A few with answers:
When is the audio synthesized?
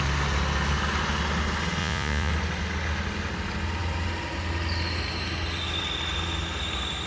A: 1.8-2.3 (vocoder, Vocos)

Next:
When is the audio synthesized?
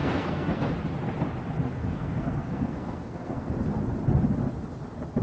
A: 0.0-0.7 (codec, SNAC); 1.8-3.5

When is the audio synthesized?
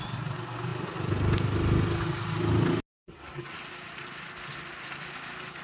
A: none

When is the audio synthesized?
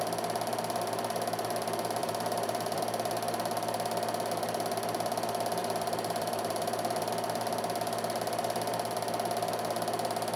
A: 2.0-2.8 (vocoder, BigVGAN v2); 5.6-7.1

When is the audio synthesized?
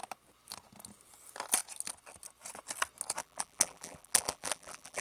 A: 3.2-5.0 (vocoder, BigVGAN v2)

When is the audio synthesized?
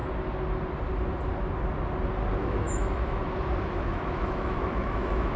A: 2.4-3.2 (autoencoder, DAC-VAE); 3.7-5.4